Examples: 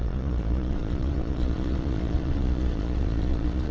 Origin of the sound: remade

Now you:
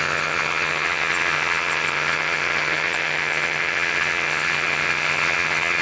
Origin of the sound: remade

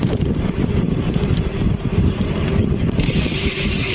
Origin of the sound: remade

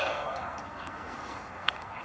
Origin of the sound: remade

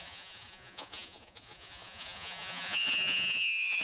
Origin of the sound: remade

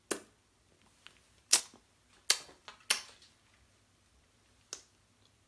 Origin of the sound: recorded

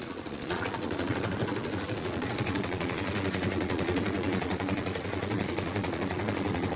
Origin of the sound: remade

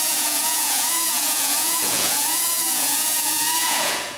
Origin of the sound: remade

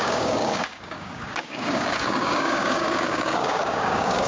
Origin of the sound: remade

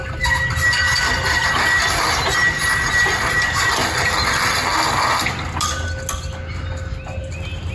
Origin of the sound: recorded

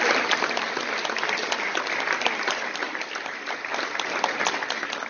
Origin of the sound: recorded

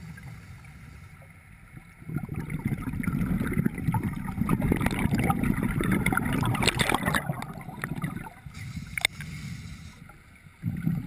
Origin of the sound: recorded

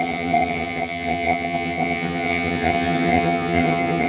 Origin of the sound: remade